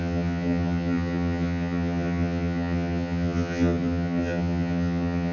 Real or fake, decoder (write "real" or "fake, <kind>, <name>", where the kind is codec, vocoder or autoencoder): fake, vocoder, HiFi-GAN